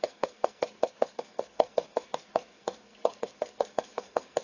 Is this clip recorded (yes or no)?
no